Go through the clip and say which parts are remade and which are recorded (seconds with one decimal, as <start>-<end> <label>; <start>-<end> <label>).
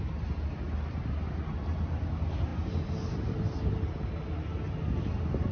0.0-5.5 recorded